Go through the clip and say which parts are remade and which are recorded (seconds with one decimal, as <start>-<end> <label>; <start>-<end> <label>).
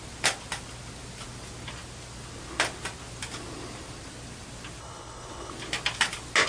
0.0-4.8 recorded; 4.8-5.5 remade; 5.5-6.5 recorded